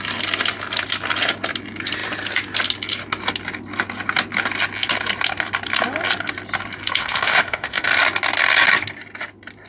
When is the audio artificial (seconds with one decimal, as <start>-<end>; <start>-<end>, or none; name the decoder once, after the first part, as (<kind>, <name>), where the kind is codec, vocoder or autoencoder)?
7.0-7.9 (autoencoder, DAC-VAE)